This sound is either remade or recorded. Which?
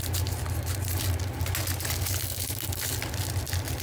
recorded